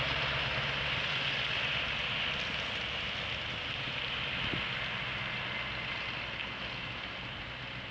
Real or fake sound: real